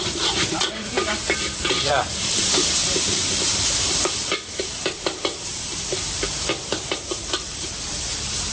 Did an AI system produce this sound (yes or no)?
yes